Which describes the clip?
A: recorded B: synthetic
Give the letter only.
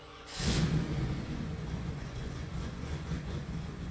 B